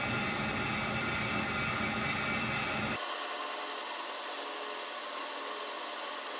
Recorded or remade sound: recorded